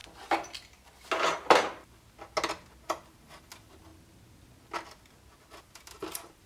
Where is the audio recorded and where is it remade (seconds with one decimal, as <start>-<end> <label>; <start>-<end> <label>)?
0.0-2.9 recorded; 2.9-3.9 remade; 3.9-5.6 recorded; 5.6-6.5 remade